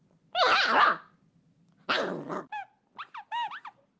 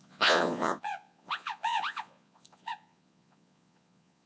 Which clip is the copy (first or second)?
second